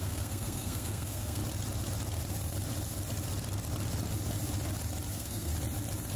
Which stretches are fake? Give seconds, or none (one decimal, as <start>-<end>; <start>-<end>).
0.0-1.4; 5.1-5.5